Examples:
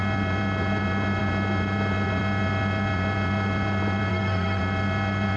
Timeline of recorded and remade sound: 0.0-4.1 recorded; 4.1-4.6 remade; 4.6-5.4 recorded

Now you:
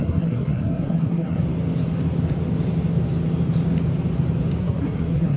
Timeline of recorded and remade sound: 0.0-1.4 remade; 1.4-4.6 recorded; 4.6-5.4 remade

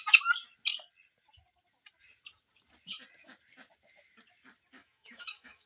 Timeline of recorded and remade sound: 0.0-4.8 recorded; 4.8-5.7 remade

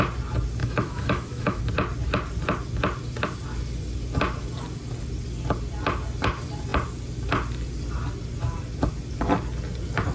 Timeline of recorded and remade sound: 0.0-0.6 recorded; 0.6-1.6 remade; 1.6-10.1 recorded

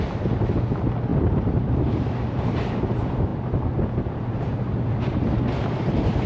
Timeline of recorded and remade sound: 0.0-1.1 recorded; 1.1-2.7 remade; 2.7-6.3 recorded